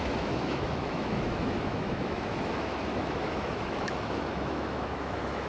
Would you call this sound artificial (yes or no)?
yes